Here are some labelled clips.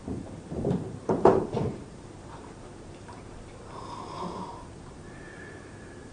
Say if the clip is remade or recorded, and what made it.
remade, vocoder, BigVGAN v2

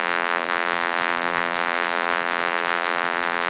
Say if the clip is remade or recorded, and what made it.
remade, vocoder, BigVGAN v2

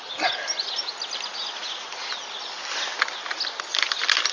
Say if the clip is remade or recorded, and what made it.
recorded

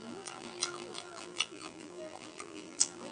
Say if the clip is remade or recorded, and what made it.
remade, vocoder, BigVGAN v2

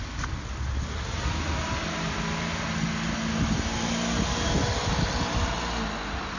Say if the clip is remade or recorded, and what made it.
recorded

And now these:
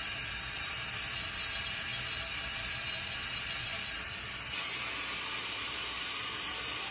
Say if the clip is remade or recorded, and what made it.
remade, vocoder, BigVGAN v2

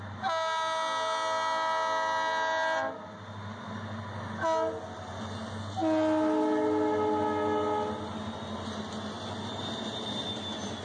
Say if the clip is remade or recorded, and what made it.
recorded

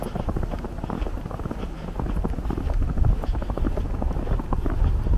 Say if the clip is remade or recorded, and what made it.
recorded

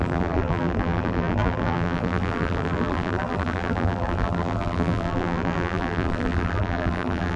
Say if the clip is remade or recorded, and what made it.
remade, vocoder, BigVGAN v2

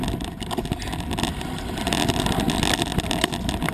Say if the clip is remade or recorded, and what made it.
recorded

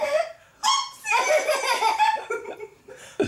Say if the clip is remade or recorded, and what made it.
remade, vocoder, BigVGAN v2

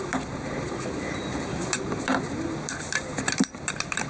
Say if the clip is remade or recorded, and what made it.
remade, vocoder, BigVGAN v2